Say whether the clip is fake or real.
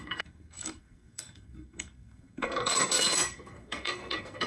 fake